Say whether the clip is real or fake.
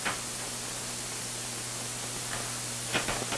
real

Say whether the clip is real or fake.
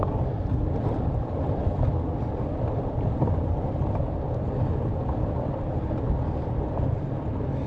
real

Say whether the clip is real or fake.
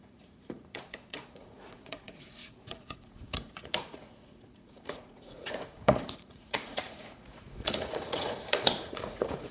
fake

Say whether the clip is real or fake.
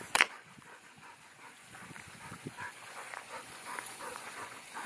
fake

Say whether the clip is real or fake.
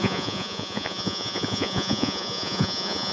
fake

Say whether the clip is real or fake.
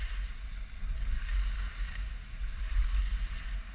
real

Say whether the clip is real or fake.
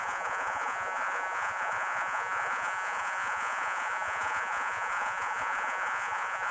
fake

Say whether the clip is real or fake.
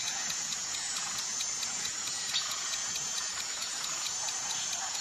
fake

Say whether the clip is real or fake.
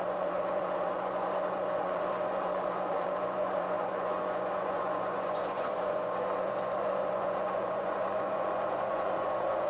fake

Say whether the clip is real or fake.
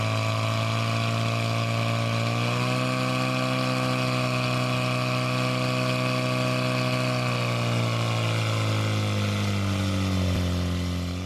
real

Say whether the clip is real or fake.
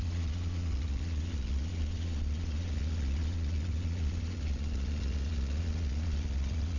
fake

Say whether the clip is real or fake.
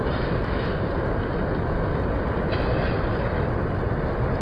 real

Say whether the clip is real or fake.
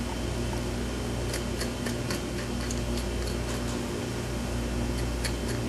real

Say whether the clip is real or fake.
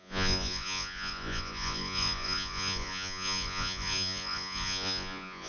fake